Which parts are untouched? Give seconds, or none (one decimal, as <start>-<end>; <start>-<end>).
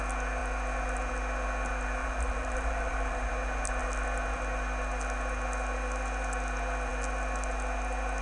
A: 0.0-2.0; 3.3-8.2